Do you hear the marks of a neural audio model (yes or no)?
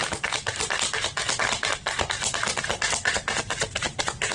no